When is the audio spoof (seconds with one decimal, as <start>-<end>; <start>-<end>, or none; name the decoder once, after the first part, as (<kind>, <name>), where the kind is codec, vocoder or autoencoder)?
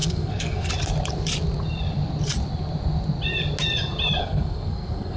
0.0-0.7 (codec, SNAC); 4.2-5.2